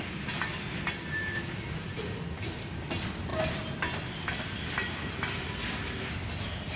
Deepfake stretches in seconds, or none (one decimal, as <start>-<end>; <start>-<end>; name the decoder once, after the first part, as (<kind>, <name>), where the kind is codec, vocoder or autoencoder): none

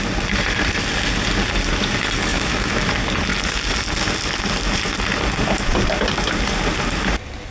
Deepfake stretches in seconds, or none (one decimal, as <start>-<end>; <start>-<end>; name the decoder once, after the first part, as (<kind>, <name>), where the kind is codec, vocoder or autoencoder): 2.3-2.9 (autoencoder, DAC-VAE)